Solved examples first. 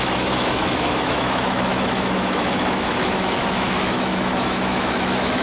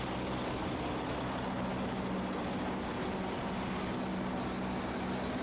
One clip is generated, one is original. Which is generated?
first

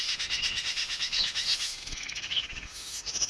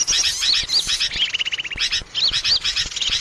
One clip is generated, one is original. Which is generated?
first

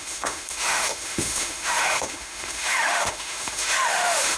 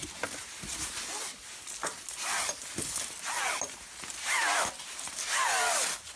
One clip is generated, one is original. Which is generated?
first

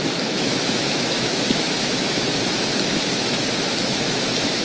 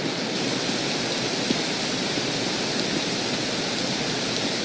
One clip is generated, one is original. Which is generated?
first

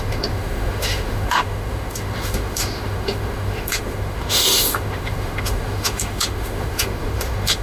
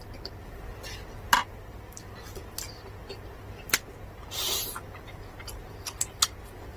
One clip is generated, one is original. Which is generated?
first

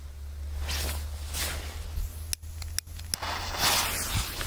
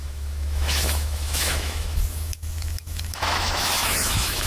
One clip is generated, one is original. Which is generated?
second